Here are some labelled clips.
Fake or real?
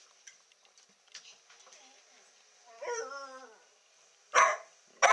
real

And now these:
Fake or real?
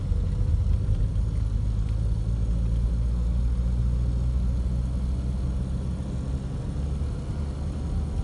real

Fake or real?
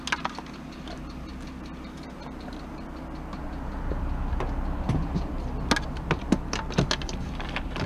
real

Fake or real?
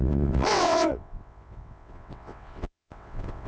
fake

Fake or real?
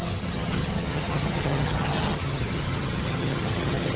fake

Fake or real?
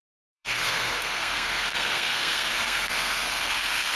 fake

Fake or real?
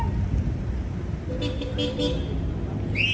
real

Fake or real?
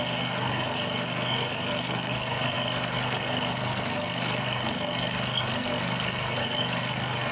fake